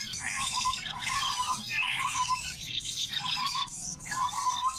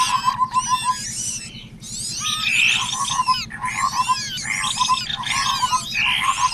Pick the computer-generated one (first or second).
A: first